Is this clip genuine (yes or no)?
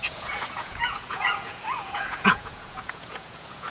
no